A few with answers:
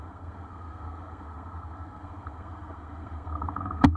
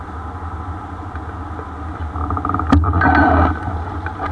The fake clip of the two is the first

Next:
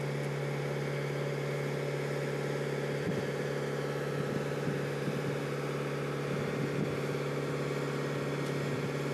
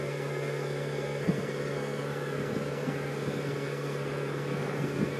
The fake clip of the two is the second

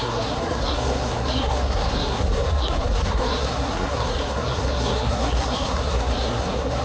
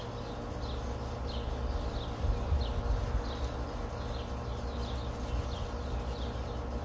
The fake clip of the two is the first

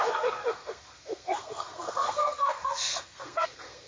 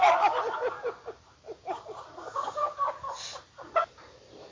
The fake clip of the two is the first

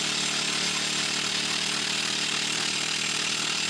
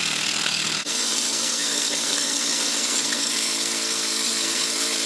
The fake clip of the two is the second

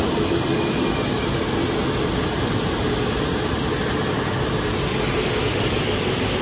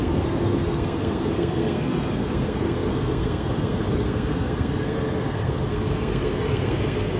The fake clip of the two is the second